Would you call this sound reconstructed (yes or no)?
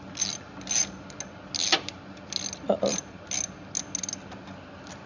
no